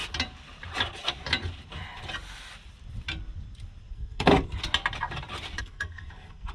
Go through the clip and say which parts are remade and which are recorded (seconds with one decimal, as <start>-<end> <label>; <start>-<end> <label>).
0.0-3.9 recorded; 3.9-4.3 remade; 4.3-5.6 recorded; 5.6-6.5 remade